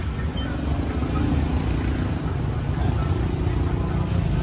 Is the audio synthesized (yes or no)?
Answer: no